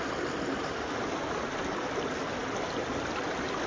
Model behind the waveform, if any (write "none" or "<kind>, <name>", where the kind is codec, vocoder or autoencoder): none